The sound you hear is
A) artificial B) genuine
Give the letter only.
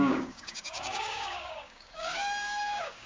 A